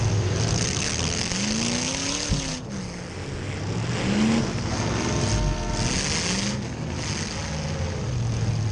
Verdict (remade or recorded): recorded